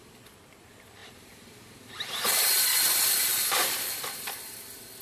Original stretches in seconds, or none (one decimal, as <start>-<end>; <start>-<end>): 0.0-1.0; 4.0-5.0